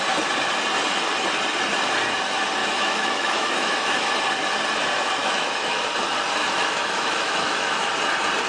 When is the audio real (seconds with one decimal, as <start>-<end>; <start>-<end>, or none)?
0.0-2.6; 4.1-5.2; 5.8-6.4; 7.9-8.5